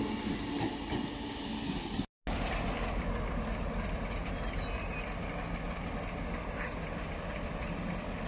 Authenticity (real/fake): real